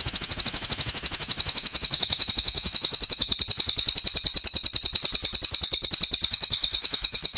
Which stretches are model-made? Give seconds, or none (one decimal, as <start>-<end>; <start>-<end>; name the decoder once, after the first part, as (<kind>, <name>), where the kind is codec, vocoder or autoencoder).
0.0-3.3 (autoencoder, DAC-VAE); 6.3-7.4